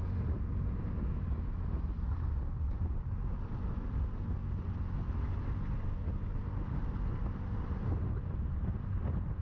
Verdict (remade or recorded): recorded